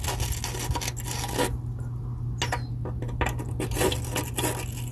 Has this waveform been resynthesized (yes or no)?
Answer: no